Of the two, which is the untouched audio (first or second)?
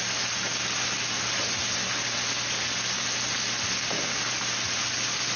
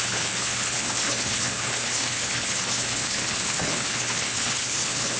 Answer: first